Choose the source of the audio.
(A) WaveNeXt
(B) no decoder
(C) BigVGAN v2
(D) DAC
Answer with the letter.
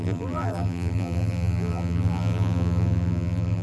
C